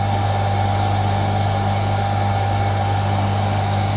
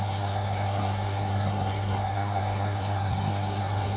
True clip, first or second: first